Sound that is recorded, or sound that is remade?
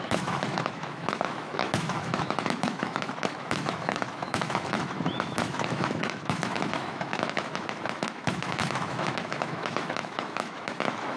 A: remade